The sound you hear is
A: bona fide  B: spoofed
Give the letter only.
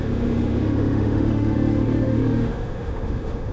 B